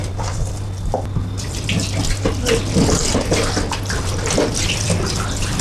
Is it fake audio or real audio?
real